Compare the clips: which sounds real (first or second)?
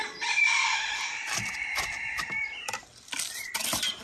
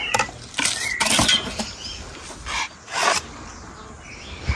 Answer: second